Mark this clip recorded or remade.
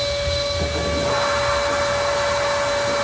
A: recorded